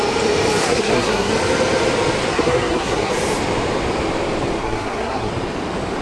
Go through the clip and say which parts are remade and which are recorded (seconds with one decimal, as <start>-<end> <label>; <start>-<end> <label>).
0.0-0.6 recorded; 0.6-1.3 remade; 1.3-2.3 recorded; 2.3-3.1 remade; 3.1-4.6 recorded; 4.6-5.3 remade; 5.3-6.0 recorded